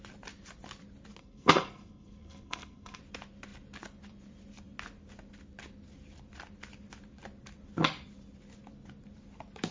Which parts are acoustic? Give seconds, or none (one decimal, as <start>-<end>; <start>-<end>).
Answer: 0.0-1.2; 3.0-9.7